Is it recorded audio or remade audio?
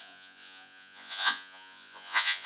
remade